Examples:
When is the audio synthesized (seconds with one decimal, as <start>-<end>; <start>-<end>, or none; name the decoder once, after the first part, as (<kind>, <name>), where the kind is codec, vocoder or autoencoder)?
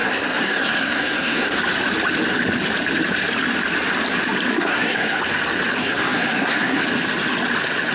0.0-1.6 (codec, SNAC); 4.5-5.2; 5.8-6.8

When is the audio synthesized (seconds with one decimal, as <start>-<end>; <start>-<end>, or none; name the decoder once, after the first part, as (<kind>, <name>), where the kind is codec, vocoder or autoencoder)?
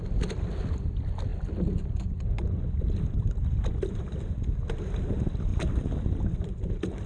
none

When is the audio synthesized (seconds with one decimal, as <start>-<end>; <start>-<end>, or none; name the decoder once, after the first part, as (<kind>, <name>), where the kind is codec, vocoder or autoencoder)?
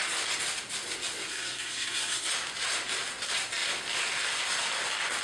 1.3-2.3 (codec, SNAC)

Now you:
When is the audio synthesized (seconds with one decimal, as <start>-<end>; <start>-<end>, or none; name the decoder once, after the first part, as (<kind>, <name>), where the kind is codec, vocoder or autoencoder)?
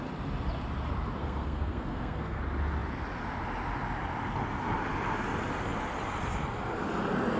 1.2-2.4 (codec, SNAC)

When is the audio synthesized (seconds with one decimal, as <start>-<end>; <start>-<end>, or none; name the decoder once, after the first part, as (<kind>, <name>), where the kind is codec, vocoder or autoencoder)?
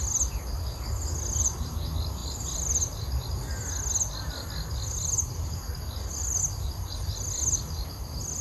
none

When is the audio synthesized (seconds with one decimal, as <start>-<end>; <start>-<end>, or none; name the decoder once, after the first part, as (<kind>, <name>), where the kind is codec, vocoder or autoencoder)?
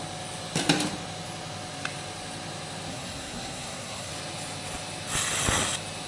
2.9-4.1 (codec, SNAC)